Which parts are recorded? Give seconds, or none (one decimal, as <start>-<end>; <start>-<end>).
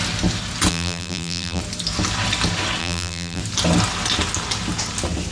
0.0-0.7; 1.6-2.8; 3.4-5.3